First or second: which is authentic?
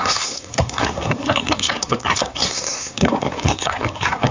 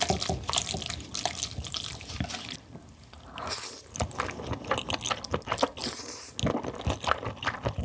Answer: second